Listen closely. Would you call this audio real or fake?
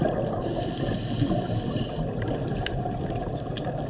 fake